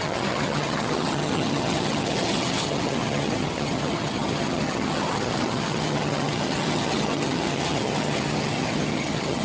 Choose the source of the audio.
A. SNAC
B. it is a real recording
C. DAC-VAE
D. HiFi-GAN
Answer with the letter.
D